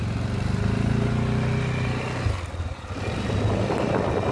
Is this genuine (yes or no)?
yes